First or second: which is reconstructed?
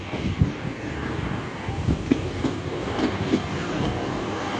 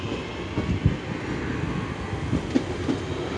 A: first